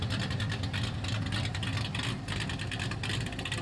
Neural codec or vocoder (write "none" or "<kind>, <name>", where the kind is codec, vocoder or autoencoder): none